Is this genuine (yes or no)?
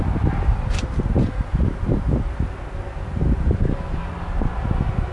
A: yes